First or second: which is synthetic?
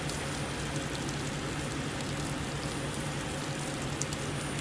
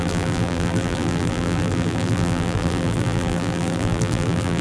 second